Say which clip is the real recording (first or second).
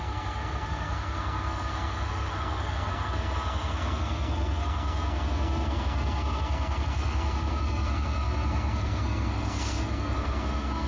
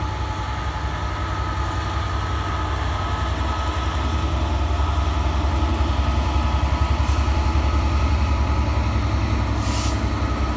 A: second